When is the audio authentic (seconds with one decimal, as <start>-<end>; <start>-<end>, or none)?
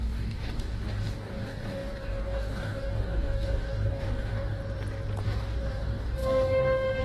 4.6-5.2